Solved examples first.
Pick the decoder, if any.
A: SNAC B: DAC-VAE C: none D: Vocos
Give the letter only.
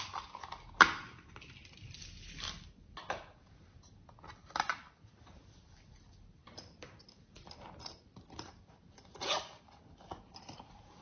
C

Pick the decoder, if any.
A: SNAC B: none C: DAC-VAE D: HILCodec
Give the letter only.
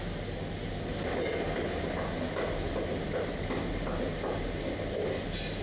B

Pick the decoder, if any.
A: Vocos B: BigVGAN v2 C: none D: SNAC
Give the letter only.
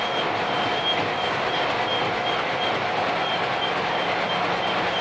C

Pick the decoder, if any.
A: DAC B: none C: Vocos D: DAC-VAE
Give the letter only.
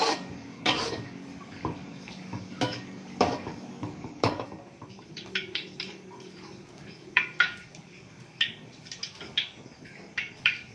A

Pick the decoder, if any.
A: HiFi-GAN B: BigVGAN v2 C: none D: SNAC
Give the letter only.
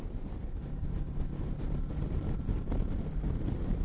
C